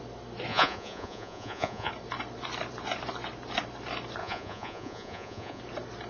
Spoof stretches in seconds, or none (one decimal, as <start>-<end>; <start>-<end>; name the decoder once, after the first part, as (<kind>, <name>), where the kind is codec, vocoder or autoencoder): 0.5-1.9 (vocoder, Vocos); 4.2-5.6